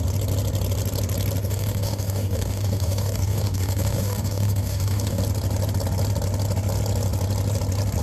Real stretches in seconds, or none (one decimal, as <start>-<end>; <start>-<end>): 0.0-1.4; 5.2-8.0